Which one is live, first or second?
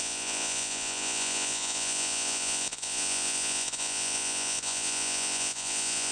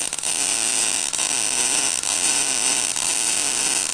second